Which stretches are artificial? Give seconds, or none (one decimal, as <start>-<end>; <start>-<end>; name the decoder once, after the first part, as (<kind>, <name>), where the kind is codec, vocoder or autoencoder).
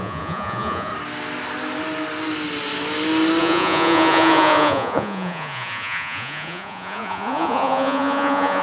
0.0-0.9 (vocoder, Vocos); 3.4-8.6